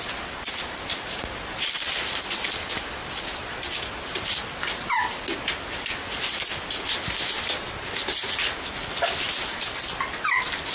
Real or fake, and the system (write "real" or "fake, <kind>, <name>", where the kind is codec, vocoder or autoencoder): real